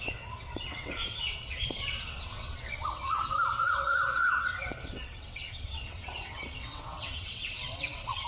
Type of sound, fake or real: fake